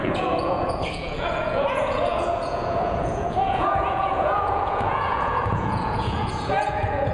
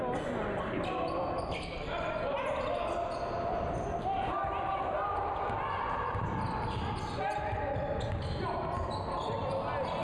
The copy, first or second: first